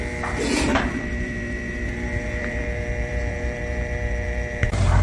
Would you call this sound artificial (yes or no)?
yes